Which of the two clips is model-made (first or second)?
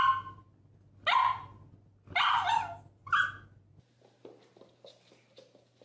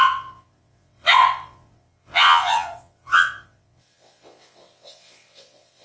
second